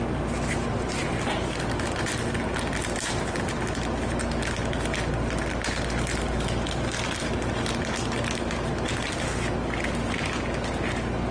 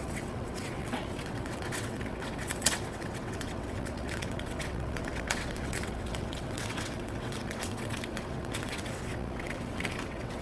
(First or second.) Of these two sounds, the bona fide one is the first